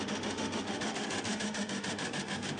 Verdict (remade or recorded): remade